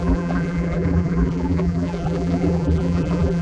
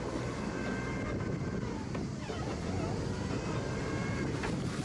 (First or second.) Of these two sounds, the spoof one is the first